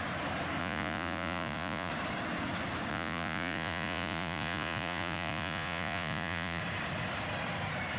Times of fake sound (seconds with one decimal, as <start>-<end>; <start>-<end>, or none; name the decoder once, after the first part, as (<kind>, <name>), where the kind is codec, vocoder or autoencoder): 0.6-1.9 (vocoder, Vocos); 2.9-6.6